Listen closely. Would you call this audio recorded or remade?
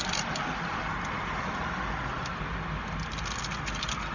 recorded